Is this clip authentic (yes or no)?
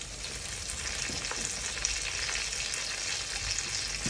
yes